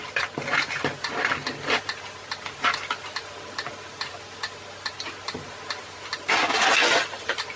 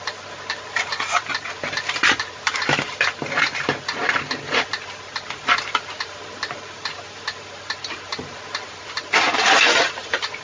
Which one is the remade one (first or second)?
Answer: second